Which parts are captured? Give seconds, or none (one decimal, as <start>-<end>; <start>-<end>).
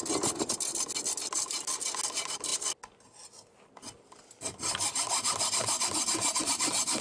0.0-7.0